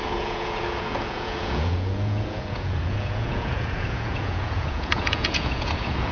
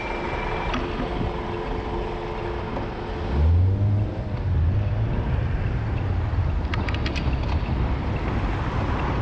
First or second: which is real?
second